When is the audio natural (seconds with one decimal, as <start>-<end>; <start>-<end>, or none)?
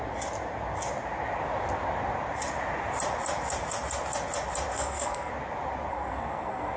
0.0-4.7; 5.3-5.9